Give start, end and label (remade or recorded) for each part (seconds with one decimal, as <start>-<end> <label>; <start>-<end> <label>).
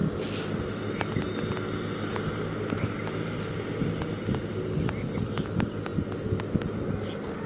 0.0-7.5 recorded